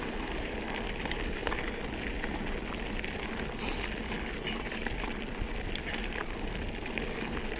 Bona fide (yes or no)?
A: yes